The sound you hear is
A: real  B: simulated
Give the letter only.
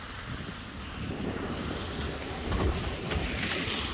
A